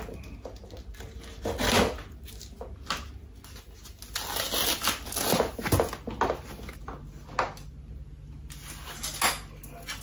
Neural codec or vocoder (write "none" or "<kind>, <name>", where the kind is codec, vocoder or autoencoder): none